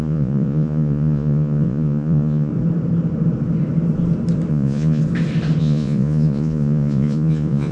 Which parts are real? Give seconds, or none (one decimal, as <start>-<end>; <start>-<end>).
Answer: 2.5-4.5; 5.0-5.6